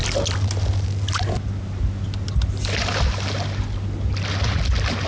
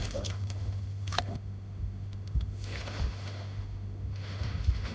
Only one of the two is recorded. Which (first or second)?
first